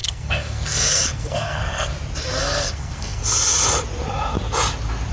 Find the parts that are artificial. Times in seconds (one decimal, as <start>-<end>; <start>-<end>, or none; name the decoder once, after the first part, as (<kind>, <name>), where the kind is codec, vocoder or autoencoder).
0.0-1.9 (codec, SNAC); 2.4-3.2

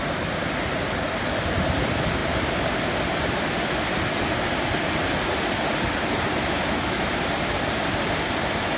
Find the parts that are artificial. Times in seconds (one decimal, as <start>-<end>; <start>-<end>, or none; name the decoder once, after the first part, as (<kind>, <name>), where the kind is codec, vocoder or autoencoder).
6.4-7.1 (autoencoder, DAC-VAE)